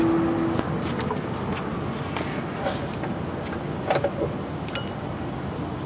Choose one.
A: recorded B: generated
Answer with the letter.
A